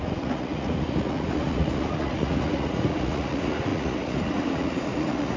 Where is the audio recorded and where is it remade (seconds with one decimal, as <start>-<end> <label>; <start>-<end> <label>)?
0.0-5.4 remade